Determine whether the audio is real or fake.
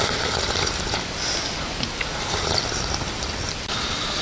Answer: real